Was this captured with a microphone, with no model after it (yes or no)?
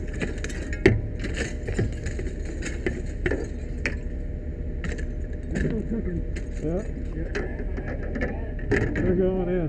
yes